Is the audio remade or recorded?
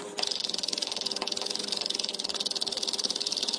recorded